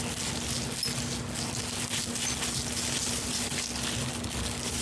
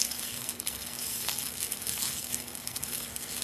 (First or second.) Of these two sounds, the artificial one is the second